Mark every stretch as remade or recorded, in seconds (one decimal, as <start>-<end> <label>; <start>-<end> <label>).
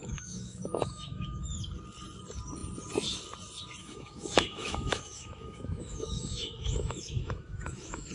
0.0-1.5 remade; 1.5-3.8 recorded; 3.8-8.1 remade